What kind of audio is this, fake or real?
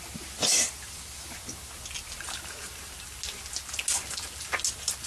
real